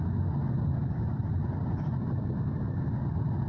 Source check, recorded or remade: recorded